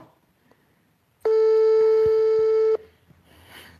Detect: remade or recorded recorded